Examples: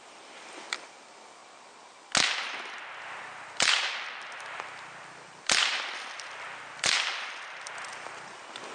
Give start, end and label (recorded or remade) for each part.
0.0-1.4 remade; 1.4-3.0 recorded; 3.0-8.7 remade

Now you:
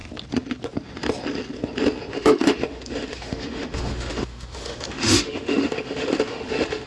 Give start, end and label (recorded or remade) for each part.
0.0-2.1 recorded; 2.1-6.9 remade

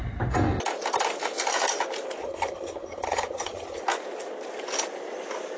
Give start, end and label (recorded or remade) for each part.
0.0-2.2 recorded; 2.2-3.8 remade; 3.8-5.6 recorded

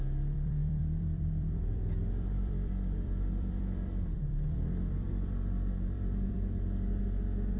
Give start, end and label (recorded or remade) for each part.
0.0-7.6 remade

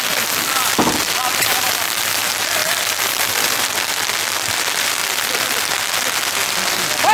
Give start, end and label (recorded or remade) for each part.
0.0-0.7 recorded; 0.7-2.0 remade; 2.0-2.6 recorded; 2.6-3.9 remade; 3.9-7.1 recorded

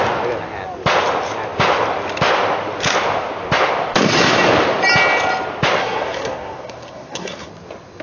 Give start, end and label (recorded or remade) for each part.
0.0-5.8 recorded; 5.8-7.5 remade; 7.5-8.0 recorded

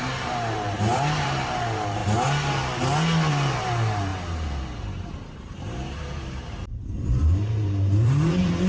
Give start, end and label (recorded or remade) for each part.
0.0-2.0 remade; 2.0-3.3 recorded; 3.3-4.1 remade; 4.1-4.8 recorded; 4.8-8.7 remade